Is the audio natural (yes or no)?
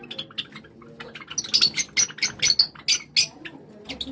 yes